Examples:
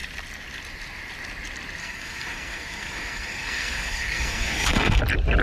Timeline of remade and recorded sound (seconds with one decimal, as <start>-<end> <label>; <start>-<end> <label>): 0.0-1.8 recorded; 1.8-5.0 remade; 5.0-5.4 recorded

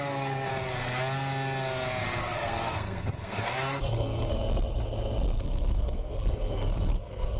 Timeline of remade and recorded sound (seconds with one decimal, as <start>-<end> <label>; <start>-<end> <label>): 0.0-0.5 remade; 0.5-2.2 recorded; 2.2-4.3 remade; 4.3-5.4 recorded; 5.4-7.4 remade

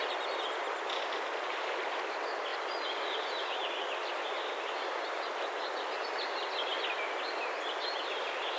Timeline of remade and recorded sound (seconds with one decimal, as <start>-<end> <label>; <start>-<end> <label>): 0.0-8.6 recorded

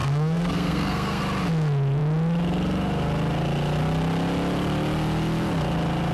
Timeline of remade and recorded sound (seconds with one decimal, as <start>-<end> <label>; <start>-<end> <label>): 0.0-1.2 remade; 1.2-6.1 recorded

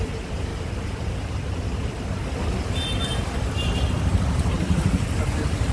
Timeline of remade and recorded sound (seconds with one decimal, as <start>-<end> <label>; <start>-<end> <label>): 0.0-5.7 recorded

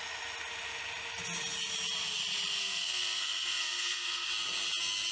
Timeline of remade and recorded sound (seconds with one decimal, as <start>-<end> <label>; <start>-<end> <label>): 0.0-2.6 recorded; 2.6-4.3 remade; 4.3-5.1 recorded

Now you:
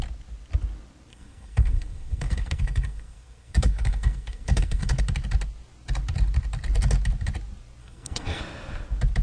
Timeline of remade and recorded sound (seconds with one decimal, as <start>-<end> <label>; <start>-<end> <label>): 0.0-1.1 recorded; 1.1-5.0 remade; 5.0-7.8 recorded; 7.8-8.4 remade; 8.4-9.2 recorded